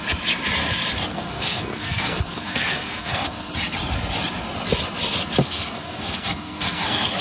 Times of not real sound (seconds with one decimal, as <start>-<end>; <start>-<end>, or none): 1.1-3.5; 5.4-7.2